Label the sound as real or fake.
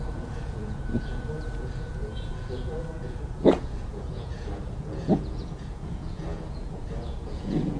fake